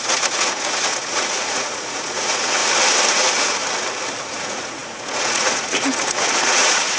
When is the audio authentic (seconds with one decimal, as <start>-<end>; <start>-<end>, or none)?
2.6-3.1; 3.6-4.2